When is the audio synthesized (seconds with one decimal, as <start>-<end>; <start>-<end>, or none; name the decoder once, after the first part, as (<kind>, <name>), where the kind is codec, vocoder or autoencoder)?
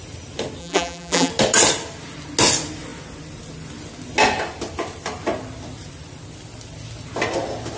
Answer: 0.6-1.3 (vocoder, BigVGAN v2)